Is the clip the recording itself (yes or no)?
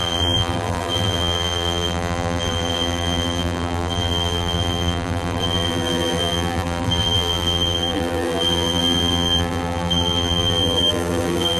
no